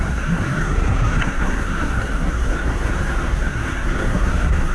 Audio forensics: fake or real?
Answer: fake